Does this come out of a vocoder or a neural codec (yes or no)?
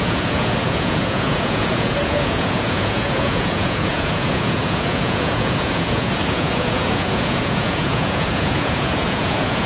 yes